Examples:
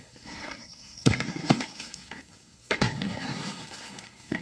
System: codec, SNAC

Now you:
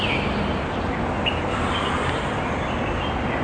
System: none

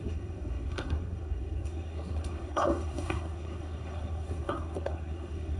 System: codec, SNAC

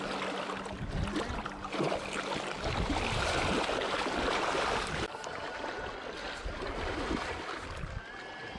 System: none